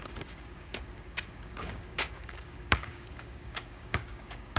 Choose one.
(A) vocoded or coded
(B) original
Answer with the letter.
A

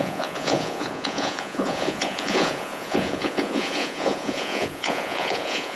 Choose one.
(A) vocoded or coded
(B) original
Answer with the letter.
A